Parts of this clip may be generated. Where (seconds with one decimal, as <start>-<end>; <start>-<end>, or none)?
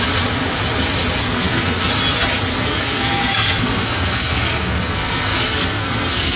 1.2-1.9; 2.5-6.4